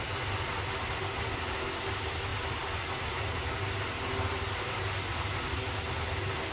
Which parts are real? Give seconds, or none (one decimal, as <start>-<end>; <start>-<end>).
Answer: 0.0-6.5